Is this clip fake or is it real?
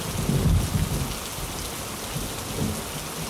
real